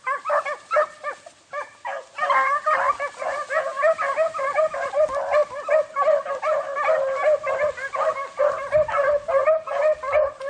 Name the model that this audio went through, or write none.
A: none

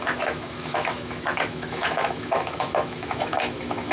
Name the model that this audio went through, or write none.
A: autoencoder, DAC-VAE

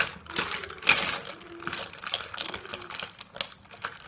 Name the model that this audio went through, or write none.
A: none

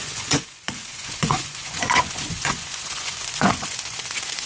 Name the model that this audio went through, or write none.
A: vocoder, Vocos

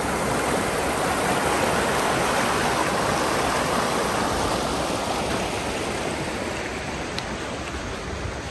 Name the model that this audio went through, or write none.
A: none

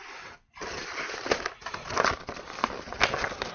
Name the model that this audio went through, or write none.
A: none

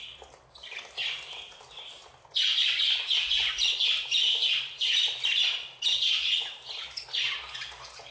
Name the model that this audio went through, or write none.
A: none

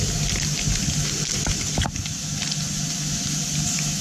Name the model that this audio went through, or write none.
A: none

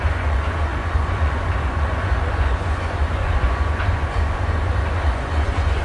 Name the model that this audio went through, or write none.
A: vocoder, Vocos